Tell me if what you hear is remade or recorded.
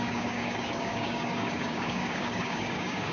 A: remade